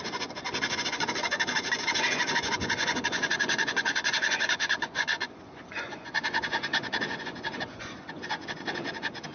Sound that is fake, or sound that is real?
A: fake